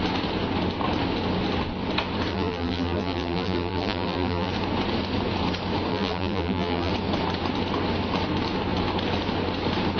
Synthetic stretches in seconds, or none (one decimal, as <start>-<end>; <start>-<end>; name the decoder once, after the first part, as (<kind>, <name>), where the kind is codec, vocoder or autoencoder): 2.3-4.5 (vocoder, BigVGAN v2); 5.9-6.9